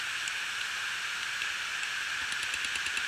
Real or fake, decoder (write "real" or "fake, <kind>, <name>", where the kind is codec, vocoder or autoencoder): real